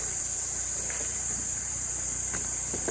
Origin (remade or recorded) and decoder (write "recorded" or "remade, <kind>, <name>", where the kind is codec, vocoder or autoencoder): remade, vocoder, BigVGAN v2